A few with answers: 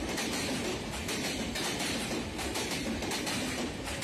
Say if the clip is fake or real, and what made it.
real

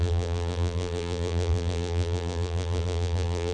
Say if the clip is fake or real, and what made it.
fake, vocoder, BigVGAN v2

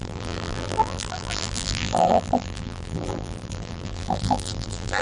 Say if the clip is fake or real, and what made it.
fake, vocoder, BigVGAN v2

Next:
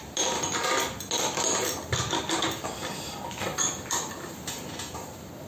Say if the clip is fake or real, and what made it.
real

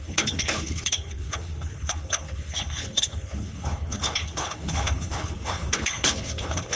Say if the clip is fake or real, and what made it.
fake, codec, HILCodec